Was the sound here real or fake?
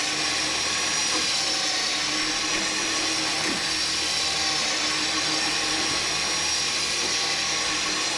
real